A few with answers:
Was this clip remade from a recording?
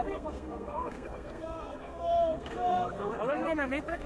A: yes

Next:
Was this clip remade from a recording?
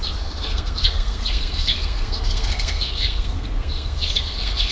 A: yes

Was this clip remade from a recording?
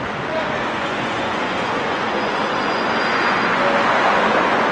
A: yes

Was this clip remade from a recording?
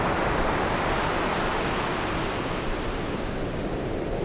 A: no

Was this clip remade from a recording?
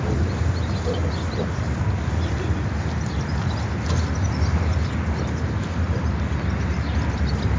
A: no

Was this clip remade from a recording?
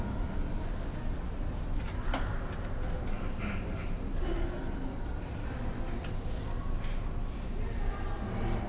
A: no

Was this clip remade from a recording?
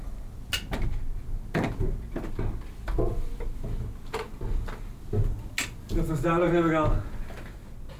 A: no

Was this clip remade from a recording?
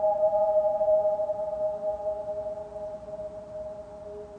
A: no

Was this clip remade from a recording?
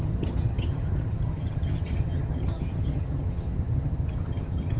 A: yes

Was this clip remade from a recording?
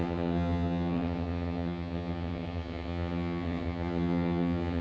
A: yes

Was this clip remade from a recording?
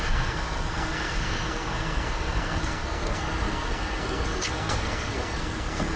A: yes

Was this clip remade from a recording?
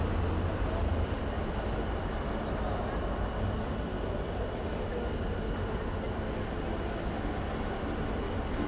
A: no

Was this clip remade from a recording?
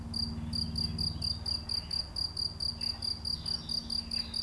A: no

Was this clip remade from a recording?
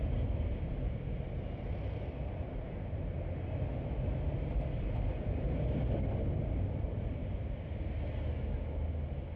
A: no